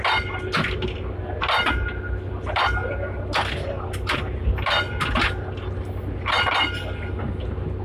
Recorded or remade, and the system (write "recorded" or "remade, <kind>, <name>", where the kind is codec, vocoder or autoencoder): recorded